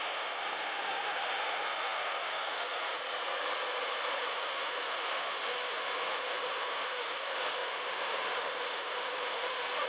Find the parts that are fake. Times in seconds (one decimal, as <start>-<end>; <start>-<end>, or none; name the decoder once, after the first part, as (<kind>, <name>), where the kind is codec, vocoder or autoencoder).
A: 0.0-3.0 (autoencoder, DAC-VAE); 4.2-9.9